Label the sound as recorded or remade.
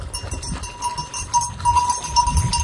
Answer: recorded